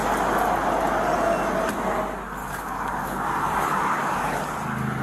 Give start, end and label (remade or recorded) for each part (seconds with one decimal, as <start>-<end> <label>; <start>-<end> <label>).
0.0-2.4 recorded; 2.4-4.4 remade; 4.4-5.0 recorded